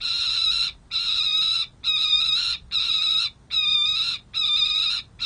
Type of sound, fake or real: fake